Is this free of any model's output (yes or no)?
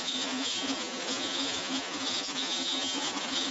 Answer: no